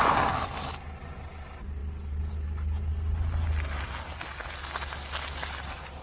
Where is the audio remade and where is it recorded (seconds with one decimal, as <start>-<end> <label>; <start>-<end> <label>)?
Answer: 0.0-6.0 recorded